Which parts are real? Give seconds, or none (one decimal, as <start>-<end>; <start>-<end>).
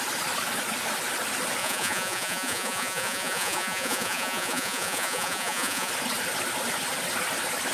0.0-1.6; 5.9-7.7